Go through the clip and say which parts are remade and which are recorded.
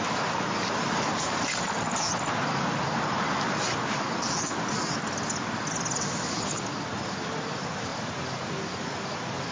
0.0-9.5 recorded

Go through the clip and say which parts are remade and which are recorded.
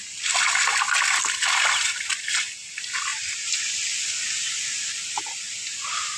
0.0-6.2 recorded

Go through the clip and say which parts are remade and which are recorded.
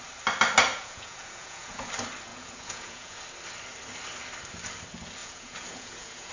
0.0-0.7 recorded; 0.7-1.9 remade; 1.9-2.3 recorded; 2.3-3.2 remade; 3.2-5.2 recorded; 5.2-6.3 remade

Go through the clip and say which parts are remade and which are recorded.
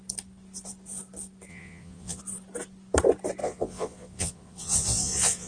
0.0-1.5 recorded; 1.5-2.2 remade; 2.2-3.4 recorded; 3.4-5.5 remade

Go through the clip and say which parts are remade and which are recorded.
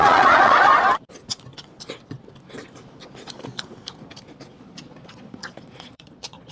0.0-0.7 remade; 0.7-4.6 recorded; 4.6-6.5 remade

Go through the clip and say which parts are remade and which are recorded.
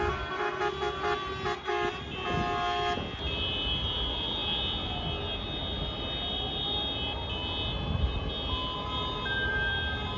0.0-10.2 recorded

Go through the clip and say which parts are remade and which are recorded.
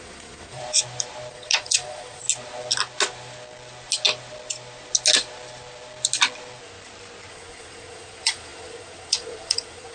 0.0-0.6 remade; 0.6-1.3 recorded; 1.3-2.2 remade; 2.2-7.3 recorded; 7.3-9.9 remade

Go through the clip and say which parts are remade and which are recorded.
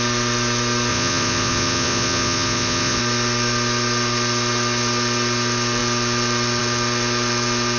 0.0-0.9 recorded; 0.9-3.0 remade; 3.0-7.8 recorded